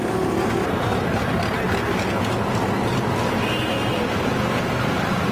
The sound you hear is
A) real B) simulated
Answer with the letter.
A